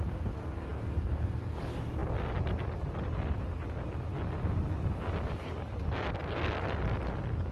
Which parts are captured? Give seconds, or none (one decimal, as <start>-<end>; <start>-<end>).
0.0-7.5